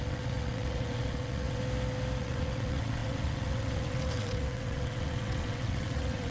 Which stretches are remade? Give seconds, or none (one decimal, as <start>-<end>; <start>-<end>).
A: 0.0-1.6; 2.2-6.3